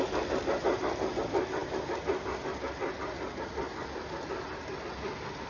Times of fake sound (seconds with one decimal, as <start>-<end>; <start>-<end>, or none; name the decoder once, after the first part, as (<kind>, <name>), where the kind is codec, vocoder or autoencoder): none